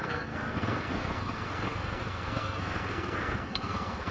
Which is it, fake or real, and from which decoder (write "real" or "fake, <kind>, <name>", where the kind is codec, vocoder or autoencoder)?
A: fake, codec, SNAC